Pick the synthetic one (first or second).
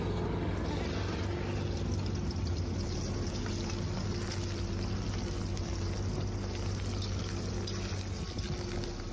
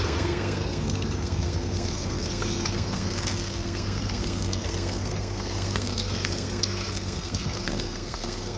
second